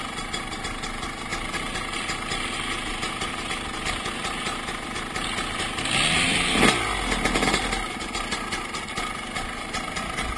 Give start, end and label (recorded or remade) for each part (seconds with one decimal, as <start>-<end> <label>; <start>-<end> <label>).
0.0-10.4 recorded